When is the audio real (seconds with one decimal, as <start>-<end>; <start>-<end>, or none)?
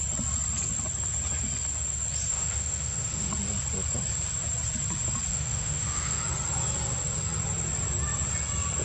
0.0-2.3; 3.3-5.3; 6.2-8.8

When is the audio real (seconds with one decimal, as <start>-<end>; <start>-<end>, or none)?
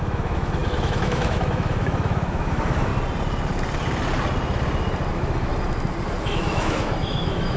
2.9-5.1; 5.5-6.2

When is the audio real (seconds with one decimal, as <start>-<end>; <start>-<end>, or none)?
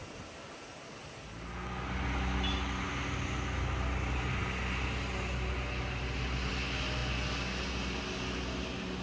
0.0-9.0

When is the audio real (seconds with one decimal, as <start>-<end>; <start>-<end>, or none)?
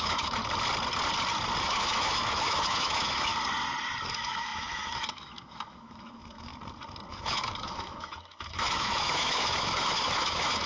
0.4-1.6; 3.3-4.1; 6.5-7.1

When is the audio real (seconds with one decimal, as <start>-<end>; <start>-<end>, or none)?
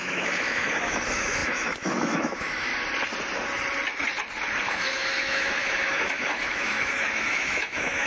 2.7-4.7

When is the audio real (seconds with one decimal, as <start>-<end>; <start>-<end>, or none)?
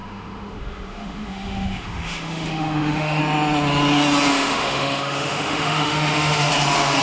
3.2-4.3; 6.5-7.0